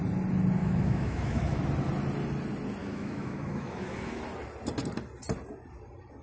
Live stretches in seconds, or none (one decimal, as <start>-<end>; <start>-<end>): 0.0-0.6; 1.6-2.8; 4.2-6.2